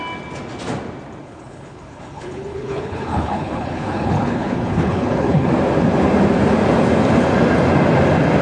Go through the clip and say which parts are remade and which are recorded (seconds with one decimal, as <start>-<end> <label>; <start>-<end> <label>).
0.0-1.2 recorded; 1.2-5.5 remade; 5.5-8.4 recorded